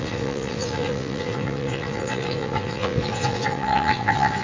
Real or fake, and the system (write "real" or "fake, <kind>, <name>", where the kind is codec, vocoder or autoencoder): fake, vocoder, WaveNeXt